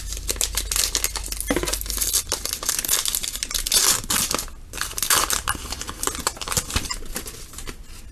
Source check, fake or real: real